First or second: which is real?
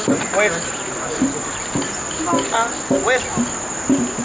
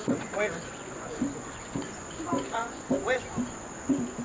first